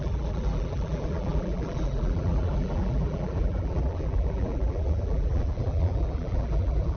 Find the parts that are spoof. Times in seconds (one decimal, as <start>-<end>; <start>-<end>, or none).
0.0-7.0